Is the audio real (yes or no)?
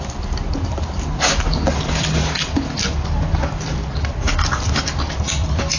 yes